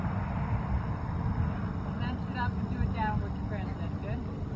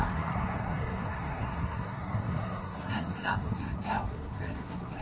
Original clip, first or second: first